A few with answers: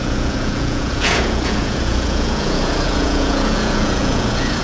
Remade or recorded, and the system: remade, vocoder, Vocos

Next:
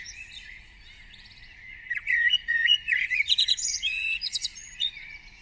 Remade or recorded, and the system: remade, vocoder, Vocos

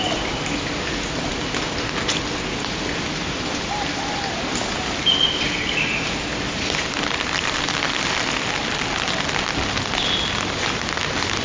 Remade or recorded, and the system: recorded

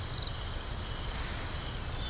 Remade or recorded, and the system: recorded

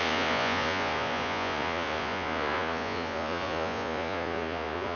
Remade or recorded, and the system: remade, vocoder, Vocos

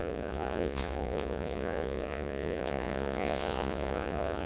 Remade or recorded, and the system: remade, vocoder, Vocos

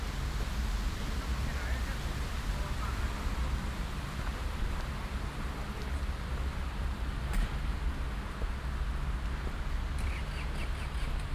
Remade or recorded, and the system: recorded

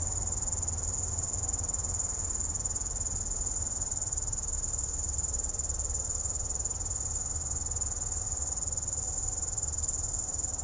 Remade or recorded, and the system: recorded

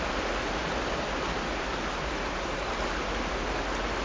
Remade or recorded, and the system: recorded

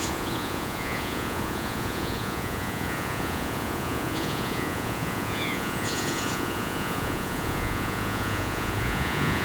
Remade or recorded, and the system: remade, vocoder, Vocos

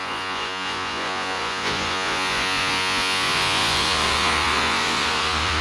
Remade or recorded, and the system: remade, vocoder, Vocos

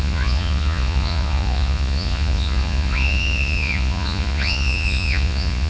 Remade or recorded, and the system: remade, vocoder, Vocos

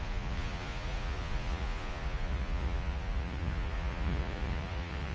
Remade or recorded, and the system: remade, vocoder, Vocos